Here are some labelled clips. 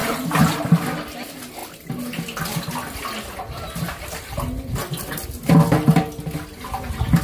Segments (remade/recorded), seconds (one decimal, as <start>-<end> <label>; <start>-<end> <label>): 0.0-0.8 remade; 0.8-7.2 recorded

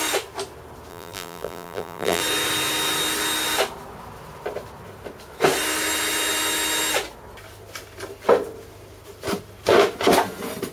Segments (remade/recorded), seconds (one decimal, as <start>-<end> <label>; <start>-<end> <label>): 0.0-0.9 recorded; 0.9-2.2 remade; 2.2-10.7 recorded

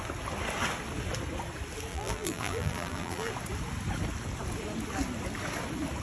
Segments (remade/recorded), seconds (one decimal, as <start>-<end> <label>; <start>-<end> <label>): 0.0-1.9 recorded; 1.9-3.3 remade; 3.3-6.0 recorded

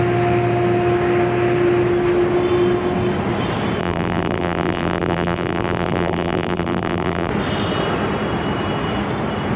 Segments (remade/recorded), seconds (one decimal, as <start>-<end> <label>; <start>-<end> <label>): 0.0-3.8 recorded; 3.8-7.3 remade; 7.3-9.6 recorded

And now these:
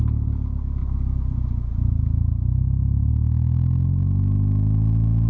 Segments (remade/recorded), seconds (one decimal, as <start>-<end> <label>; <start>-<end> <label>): 0.0-0.8 recorded; 0.8-3.1 remade; 3.1-5.3 recorded

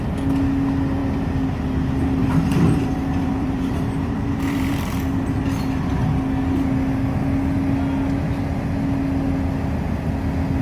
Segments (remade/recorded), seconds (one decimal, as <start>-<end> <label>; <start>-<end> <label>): 0.0-2.2 recorded; 2.2-5.4 remade; 5.4-10.6 recorded

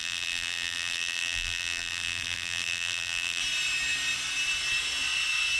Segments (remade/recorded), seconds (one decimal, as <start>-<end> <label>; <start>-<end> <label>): 0.0-3.4 remade; 3.4-5.6 recorded

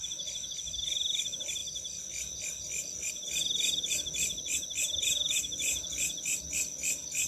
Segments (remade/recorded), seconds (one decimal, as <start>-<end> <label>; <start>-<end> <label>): 0.0-4.9 recorded; 4.9-6.4 remade; 6.4-7.3 recorded